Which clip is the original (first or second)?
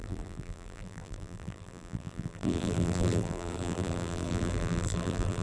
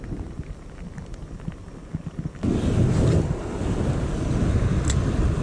second